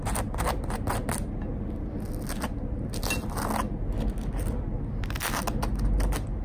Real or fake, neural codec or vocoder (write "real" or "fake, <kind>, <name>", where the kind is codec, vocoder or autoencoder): real